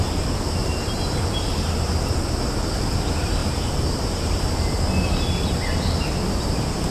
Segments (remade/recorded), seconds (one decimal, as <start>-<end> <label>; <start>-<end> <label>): 0.0-0.6 recorded; 0.6-1.2 remade; 1.2-3.4 recorded; 3.4-4.8 remade; 4.8-6.9 recorded